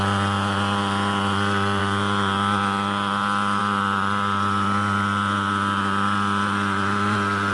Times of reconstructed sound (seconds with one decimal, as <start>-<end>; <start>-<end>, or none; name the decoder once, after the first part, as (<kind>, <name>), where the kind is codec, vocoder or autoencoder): none